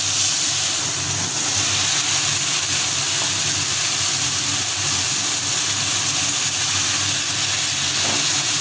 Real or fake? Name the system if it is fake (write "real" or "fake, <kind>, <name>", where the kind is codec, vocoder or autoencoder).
real